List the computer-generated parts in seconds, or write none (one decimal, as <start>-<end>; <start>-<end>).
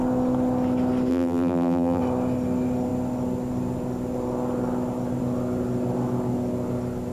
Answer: 1.1-2.0